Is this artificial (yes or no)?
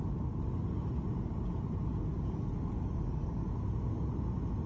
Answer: no